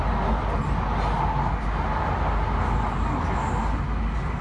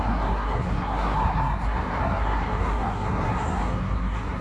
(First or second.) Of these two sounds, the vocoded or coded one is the second